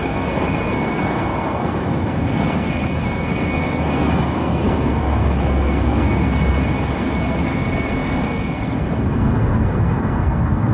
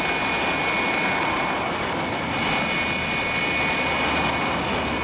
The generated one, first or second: first